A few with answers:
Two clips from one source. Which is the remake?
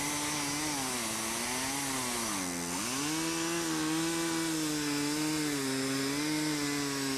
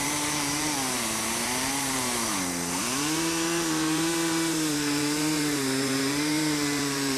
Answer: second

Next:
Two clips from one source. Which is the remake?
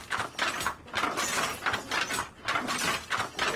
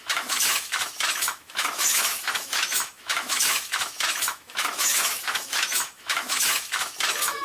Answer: second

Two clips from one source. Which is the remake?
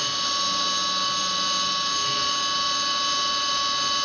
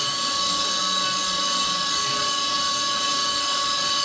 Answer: second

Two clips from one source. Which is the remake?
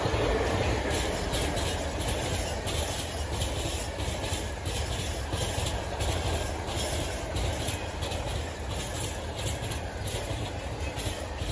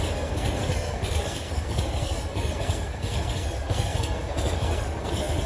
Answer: second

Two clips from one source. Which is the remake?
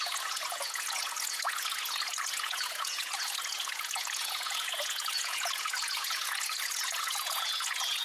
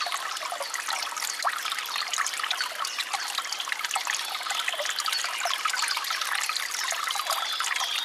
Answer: first